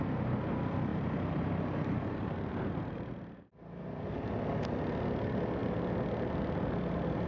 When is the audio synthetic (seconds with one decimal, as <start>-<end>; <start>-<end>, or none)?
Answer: 0.9-3.1